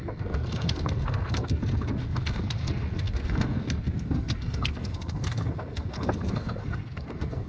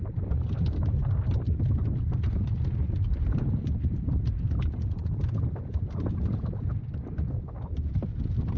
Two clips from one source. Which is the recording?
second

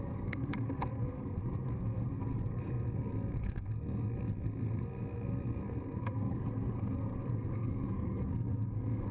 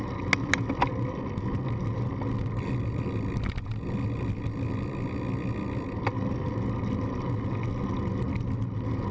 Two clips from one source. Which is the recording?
second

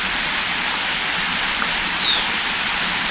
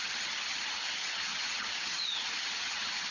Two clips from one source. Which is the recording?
first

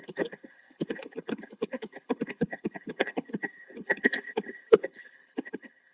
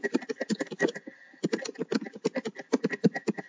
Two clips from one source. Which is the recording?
second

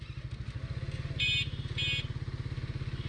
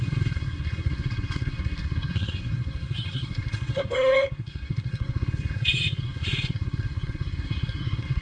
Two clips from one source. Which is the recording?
first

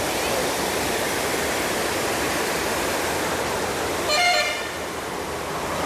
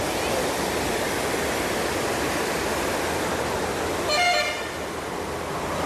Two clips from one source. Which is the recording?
second